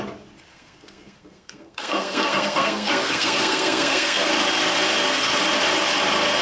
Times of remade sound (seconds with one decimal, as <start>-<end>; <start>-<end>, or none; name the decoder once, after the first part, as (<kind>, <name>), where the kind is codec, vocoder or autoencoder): 0.5-4.3 (codec, SNAC)